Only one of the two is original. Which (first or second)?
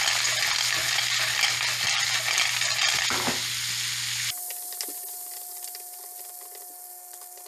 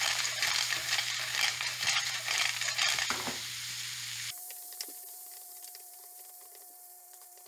first